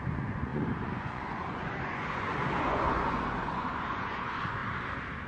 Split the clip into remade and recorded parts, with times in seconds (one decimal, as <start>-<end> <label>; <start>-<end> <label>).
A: 0.0-4.6 remade; 4.6-5.3 recorded